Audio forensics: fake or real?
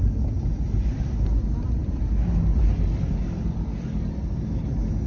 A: real